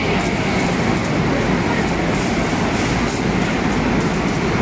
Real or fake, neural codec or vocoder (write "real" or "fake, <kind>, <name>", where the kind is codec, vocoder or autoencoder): real